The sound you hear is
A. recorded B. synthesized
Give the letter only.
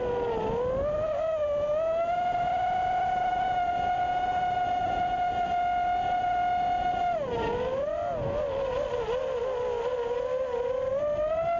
A